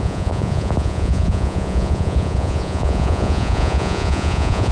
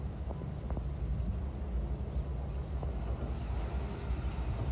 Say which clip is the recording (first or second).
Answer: second